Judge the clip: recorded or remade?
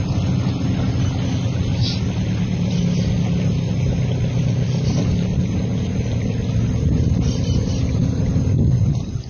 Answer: recorded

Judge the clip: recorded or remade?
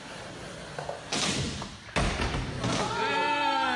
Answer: recorded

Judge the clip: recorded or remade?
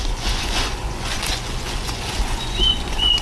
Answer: remade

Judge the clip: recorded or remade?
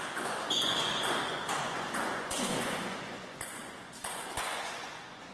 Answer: remade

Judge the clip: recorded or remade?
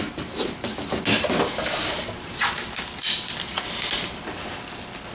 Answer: recorded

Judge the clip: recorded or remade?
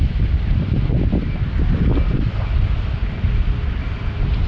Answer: recorded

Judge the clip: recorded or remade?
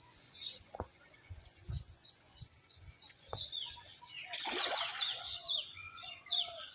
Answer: remade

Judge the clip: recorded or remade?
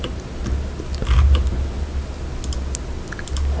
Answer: recorded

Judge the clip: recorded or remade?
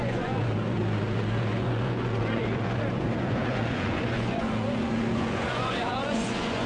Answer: remade